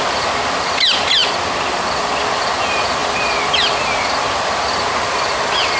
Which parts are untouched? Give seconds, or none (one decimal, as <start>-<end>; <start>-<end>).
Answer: 1.2-2.2